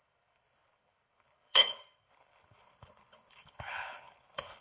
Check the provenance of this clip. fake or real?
fake